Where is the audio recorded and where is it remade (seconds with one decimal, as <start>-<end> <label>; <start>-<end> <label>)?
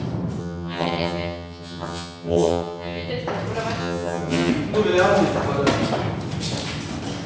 0.0-0.4 recorded; 0.4-3.1 remade; 3.1-3.8 recorded; 3.8-4.5 remade; 4.5-7.3 recorded